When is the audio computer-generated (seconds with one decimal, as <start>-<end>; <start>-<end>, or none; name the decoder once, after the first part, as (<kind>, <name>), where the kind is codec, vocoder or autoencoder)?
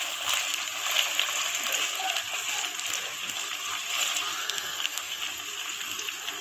4.4-5.2 (codec, SNAC)